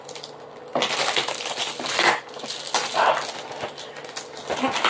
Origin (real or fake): real